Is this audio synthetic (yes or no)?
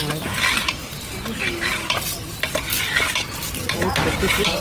no